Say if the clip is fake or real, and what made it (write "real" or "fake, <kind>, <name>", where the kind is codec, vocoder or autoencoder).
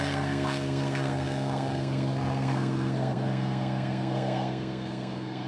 fake, codec, SNAC